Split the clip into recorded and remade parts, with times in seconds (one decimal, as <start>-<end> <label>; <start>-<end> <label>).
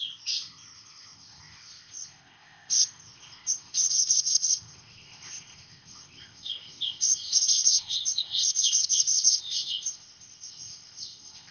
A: 0.0-11.5 remade